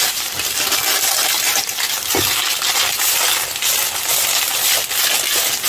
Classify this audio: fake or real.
real